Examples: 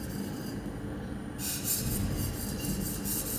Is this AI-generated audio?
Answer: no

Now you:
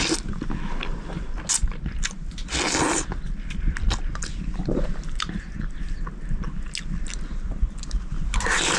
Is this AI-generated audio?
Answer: no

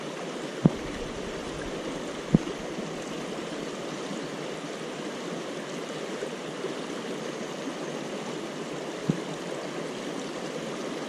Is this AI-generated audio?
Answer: no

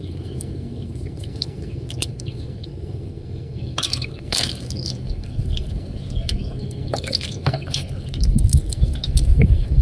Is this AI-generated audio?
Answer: yes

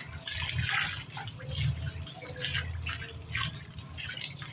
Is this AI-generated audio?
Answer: no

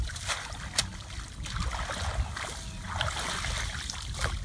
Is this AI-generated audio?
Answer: no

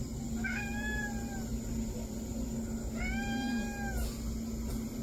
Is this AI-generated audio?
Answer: no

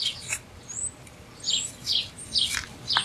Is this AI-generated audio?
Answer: yes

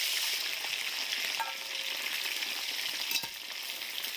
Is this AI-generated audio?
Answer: no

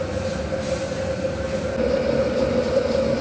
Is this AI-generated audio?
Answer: no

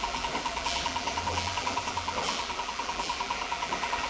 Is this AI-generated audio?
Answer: yes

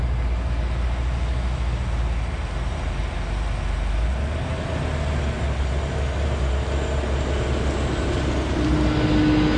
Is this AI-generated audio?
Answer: no